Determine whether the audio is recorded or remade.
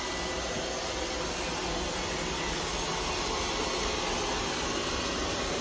recorded